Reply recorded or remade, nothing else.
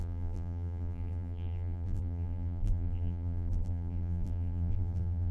remade